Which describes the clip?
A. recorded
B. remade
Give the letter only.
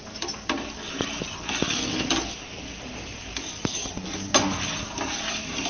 A